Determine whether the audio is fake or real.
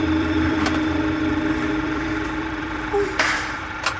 fake